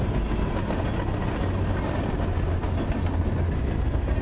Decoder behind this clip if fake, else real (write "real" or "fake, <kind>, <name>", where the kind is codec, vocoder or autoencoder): real